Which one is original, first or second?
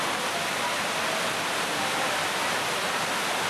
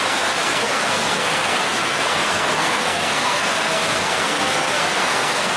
first